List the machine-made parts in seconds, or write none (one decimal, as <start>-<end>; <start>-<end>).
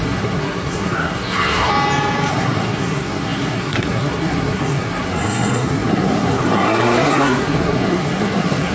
0.0-1.7; 2.3-8.7